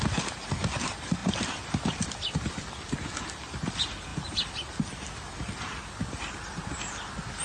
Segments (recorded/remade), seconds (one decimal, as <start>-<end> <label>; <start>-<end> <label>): 0.0-7.4 recorded